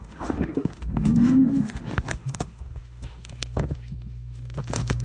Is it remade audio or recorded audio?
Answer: remade